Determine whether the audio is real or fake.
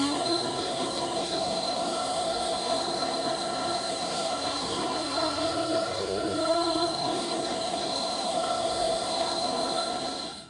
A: fake